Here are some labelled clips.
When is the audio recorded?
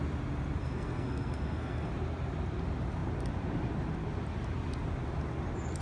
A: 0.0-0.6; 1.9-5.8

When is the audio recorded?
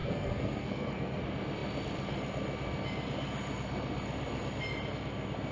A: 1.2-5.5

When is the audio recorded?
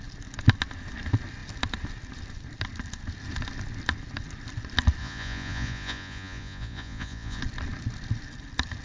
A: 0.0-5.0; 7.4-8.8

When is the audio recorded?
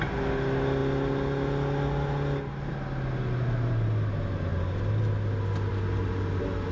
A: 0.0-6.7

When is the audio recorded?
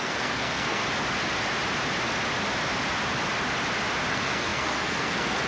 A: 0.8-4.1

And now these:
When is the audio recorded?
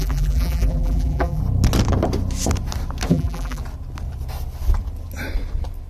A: 1.4-3.1; 3.6-5.9